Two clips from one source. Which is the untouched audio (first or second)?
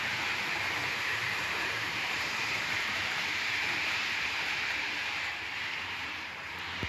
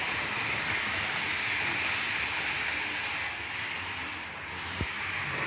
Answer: second